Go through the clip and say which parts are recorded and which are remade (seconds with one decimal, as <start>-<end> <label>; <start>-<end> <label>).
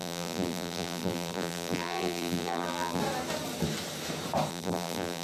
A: 0.0-3.0 remade; 3.0-4.5 recorded; 4.5-5.2 remade